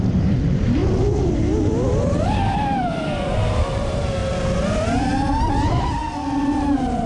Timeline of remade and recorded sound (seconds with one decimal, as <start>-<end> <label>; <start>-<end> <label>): 0.0-0.8 remade; 0.8-1.3 recorded; 1.3-4.2 remade; 4.2-5.0 recorded; 5.0-6.0 remade; 6.0-6.6 recorded; 6.6-7.1 remade